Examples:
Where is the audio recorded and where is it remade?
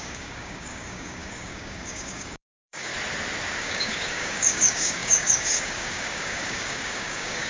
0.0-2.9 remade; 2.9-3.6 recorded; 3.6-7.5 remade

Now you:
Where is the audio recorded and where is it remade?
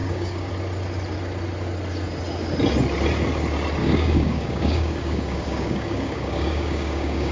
0.0-0.5 remade; 0.5-3.8 recorded; 3.8-7.3 remade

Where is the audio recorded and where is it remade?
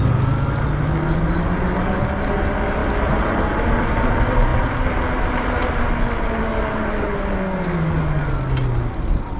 0.0-6.4 recorded; 6.4-8.3 remade; 8.3-9.4 recorded